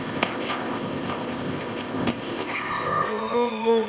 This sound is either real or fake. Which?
fake